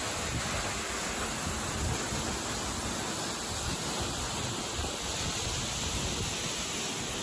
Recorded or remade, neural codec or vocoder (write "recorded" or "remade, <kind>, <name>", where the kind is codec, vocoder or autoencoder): recorded